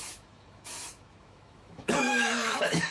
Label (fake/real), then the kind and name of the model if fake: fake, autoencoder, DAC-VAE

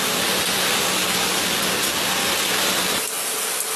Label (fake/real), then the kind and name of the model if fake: real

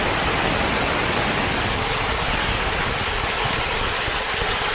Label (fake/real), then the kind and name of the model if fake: real